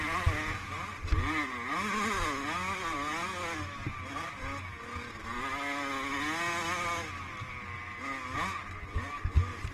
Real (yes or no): yes